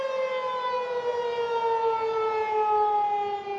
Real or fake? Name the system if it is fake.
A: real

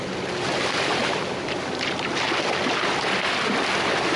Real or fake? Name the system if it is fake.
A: real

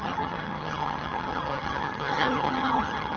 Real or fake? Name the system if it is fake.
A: fake, vocoder, HiFi-GAN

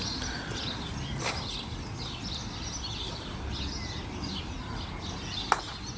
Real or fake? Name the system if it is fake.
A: real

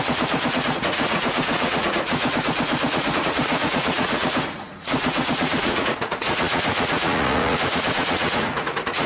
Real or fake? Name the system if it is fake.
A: fake, vocoder, Vocos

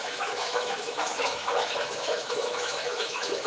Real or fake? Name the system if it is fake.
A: fake, autoencoder, DAC-VAE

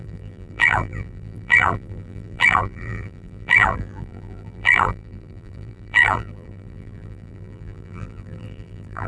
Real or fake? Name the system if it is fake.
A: fake, vocoder, BigVGAN v2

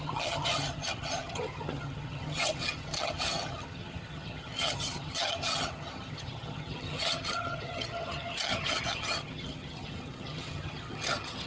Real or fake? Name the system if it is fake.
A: fake, vocoder, HiFi-GAN